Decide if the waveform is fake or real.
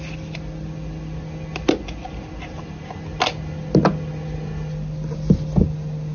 real